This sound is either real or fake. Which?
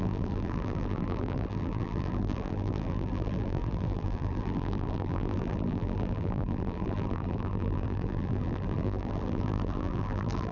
fake